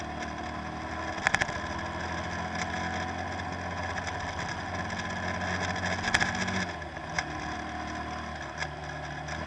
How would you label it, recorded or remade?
recorded